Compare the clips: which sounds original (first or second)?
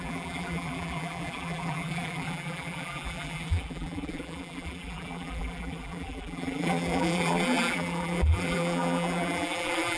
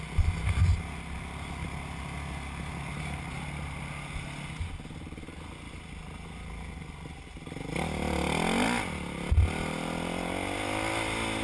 second